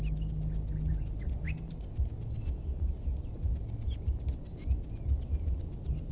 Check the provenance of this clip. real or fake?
real